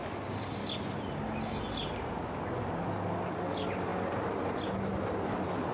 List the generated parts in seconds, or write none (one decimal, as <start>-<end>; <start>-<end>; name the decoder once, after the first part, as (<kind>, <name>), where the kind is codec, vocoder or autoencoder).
none